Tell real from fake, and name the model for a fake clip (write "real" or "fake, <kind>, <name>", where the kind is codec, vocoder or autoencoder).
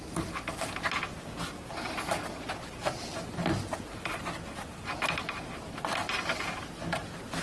real